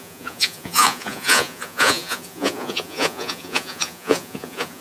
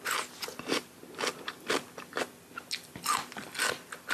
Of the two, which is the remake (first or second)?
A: first